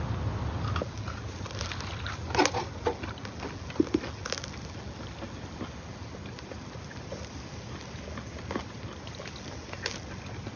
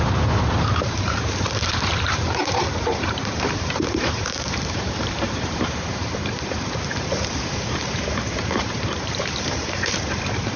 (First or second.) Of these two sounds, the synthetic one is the second